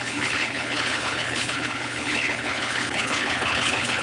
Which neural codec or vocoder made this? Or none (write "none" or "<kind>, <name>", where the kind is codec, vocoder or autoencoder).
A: codec, HILCodec